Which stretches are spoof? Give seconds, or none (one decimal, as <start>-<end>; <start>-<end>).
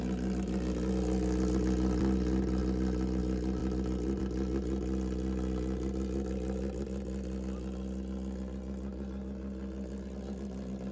none